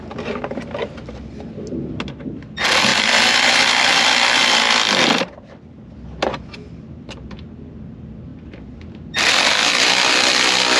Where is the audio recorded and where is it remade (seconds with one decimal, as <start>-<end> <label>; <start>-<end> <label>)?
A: 0.0-10.8 recorded